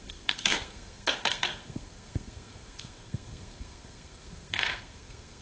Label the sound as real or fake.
fake